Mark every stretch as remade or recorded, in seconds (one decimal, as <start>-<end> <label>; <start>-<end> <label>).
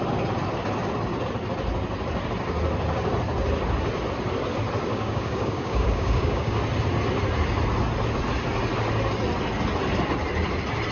0.0-4.9 recorded; 4.9-6.6 remade; 6.6-10.9 recorded